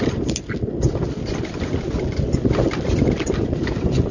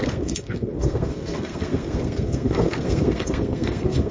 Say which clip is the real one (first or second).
first